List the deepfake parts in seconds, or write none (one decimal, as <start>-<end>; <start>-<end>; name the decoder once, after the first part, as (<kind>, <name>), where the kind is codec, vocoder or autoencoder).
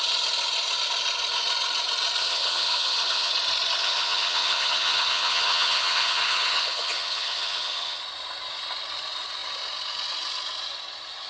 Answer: 2.2-3.3 (vocoder, HiFi-GAN); 3.8-8.0